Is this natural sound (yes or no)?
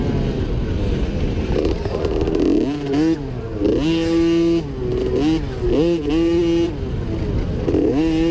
yes